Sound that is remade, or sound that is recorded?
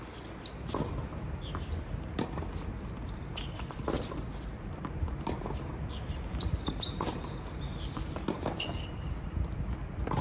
remade